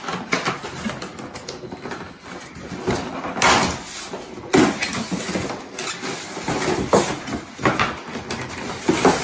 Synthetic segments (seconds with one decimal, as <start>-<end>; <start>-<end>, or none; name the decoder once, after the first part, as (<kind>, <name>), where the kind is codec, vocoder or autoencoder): none